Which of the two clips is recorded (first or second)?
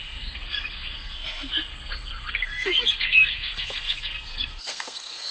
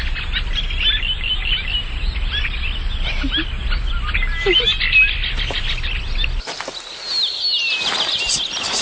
second